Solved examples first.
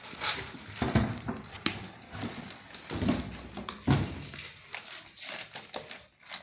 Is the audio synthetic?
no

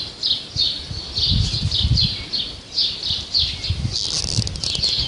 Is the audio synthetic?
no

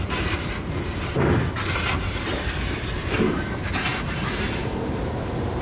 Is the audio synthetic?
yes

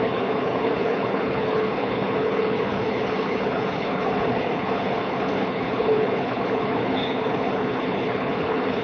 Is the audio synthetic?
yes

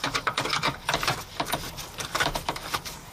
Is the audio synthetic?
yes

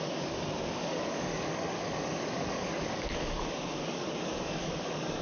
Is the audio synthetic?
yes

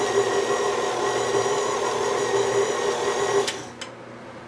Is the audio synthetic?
no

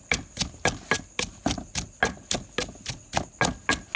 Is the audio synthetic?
no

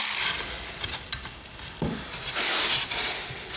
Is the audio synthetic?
no